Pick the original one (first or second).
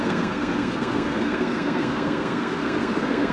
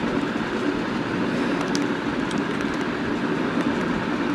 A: second